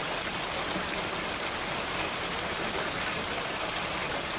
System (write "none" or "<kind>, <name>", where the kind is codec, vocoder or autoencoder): none